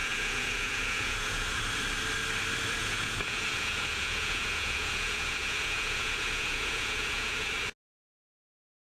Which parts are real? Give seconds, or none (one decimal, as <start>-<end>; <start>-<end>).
1.6-2.8; 7.5-8.9